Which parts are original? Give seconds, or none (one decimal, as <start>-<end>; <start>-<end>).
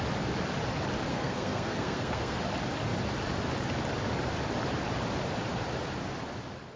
0.0-1.1; 2.4-6.8